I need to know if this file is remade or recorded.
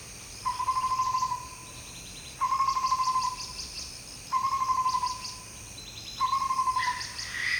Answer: recorded